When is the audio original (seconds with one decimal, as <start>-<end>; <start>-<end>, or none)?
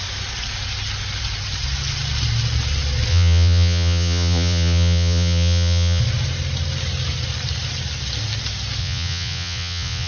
0.0-3.1; 6.0-8.8